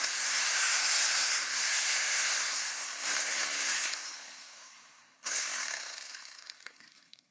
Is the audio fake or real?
fake